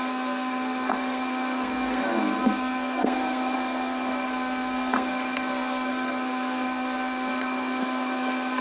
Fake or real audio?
fake